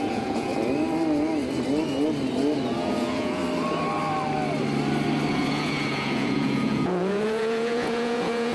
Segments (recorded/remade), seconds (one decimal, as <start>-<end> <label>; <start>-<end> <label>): 0.0-0.5 remade; 0.5-2.8 recorded; 2.8-3.4 remade; 3.4-5.3 recorded; 5.3-8.5 remade